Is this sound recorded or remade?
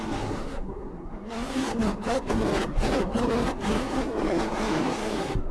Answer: remade